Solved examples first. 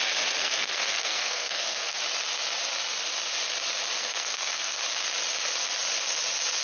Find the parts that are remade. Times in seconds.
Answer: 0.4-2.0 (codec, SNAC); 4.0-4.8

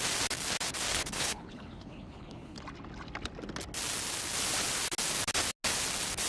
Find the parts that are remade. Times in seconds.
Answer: 0.9-2.6 (codec, HILCodec)

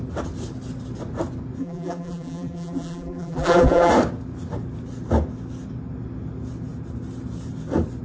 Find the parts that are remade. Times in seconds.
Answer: 1.6-3.9 (vocoder, BigVGAN v2)

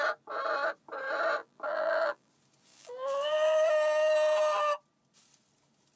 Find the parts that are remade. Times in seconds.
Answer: 1.4-2.3 (vocoder, BigVGAN v2); 2.7-3.7

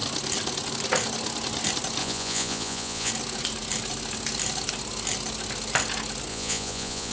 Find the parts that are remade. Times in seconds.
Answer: 2.0-3.1 (vocoder, Vocos); 6.3-7.1

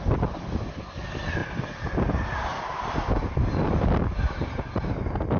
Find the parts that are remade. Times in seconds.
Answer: none